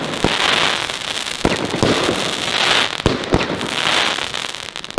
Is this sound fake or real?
real